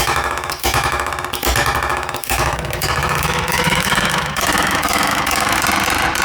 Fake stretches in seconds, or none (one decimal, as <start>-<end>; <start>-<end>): 0.0-1.1; 1.9-5.6